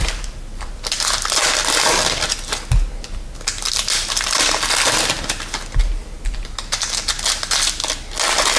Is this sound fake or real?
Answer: real